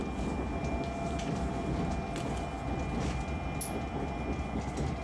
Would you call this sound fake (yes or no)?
no